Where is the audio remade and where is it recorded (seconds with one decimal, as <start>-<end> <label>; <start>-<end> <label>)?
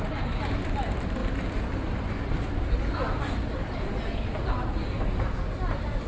0.0-6.1 recorded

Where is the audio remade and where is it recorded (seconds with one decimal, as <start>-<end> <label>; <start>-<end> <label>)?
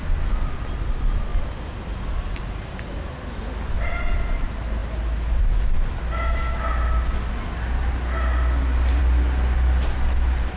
0.0-10.6 recorded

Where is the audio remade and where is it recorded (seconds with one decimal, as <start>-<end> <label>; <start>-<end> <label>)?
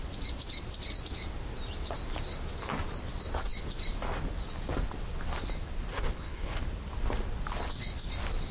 0.0-5.9 recorded; 5.9-6.6 remade; 6.6-8.5 recorded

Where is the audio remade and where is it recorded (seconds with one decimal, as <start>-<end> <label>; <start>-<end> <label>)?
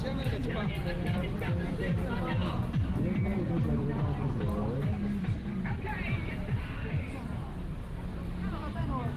0.0-2.4 remade; 2.4-6.3 recorded; 6.3-7.4 remade; 7.4-9.2 recorded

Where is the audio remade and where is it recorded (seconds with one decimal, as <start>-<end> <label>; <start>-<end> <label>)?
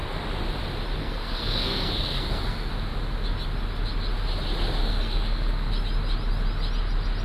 0.0-1.0 recorded; 1.0-2.7 remade; 2.7-4.8 recorded; 4.8-5.7 remade; 5.7-7.2 recorded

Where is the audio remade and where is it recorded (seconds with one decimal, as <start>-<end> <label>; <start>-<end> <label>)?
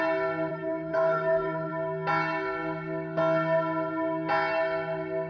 0.0-0.5 recorded; 0.5-1.7 remade; 1.7-5.3 recorded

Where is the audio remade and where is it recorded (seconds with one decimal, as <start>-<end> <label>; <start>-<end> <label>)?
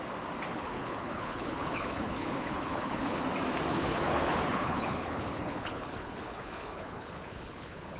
0.0-0.5 recorded; 0.5-3.2 remade; 3.2-3.7 recorded; 3.7-8.0 remade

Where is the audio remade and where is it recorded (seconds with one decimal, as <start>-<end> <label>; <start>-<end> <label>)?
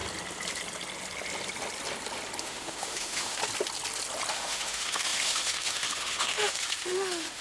0.0-2.4 recorded; 2.4-3.4 remade; 3.4-4.3 recorded; 4.3-7.4 remade